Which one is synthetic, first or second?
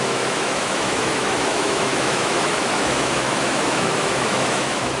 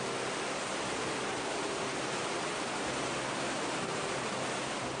first